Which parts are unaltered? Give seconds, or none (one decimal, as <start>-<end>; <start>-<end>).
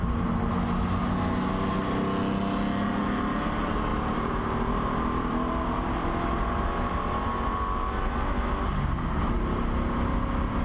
0.0-3.9; 7.3-10.6